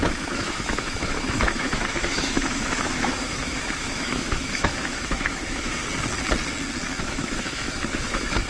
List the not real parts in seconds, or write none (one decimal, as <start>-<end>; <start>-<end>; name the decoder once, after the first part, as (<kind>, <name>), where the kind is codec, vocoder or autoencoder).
0.0-5.8 (autoencoder, DAC-VAE); 7.0-8.5